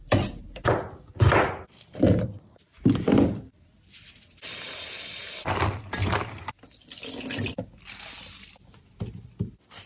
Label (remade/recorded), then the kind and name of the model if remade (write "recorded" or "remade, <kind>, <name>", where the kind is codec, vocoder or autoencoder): remade, vocoder, BigVGAN v2